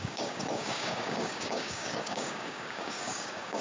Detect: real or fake fake